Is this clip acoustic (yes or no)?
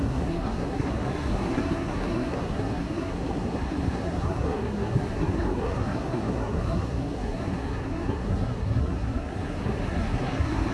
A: no